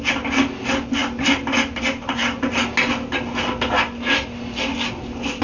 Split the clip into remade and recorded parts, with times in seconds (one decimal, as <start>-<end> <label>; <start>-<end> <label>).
0.0-5.4 recorded